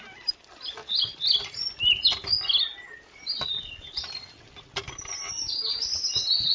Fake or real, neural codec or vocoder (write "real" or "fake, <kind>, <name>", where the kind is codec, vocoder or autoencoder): real